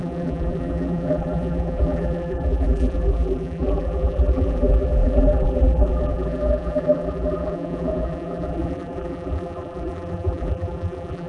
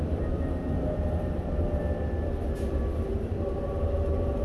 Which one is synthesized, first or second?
first